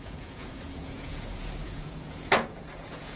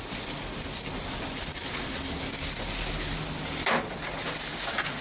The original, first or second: second